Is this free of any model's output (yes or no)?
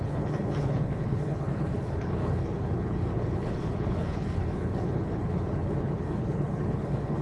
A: no